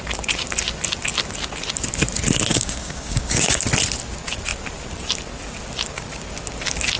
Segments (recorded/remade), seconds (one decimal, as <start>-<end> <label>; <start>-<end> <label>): 0.0-2.5 recorded; 2.5-3.6 remade; 3.6-7.0 recorded